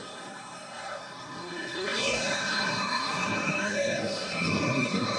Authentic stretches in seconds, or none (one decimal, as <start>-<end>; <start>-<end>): none